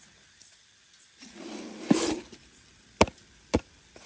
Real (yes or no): yes